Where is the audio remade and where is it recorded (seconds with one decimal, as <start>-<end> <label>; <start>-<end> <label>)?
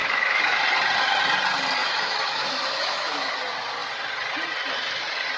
0.0-0.6 remade; 0.6-1.8 recorded; 1.8-3.3 remade; 3.3-5.4 recorded